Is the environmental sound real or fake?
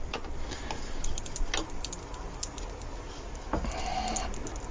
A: real